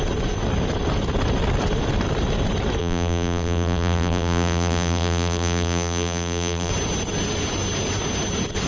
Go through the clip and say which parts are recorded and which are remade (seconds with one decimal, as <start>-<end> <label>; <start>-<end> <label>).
0.0-2.8 recorded; 2.8-6.7 remade; 6.7-8.7 recorded